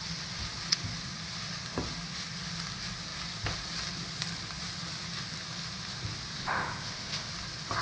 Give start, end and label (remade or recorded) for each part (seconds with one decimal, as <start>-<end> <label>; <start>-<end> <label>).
0.0-6.4 recorded; 6.4-7.3 remade; 7.3-7.8 recorded